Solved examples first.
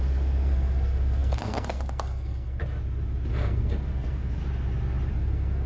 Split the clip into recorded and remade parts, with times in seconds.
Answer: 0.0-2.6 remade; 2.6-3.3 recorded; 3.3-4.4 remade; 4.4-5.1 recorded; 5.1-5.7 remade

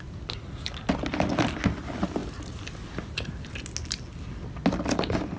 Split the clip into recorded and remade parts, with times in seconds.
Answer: 0.0-5.4 recorded

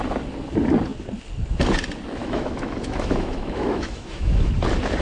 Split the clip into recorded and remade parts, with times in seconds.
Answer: 0.0-2.2 recorded; 2.2-4.5 remade; 4.5-5.0 recorded

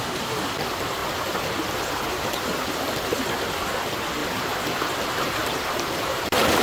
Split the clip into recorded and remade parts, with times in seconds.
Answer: 0.0-4.2 recorded; 4.2-6.6 remade